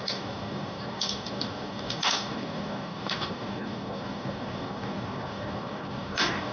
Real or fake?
fake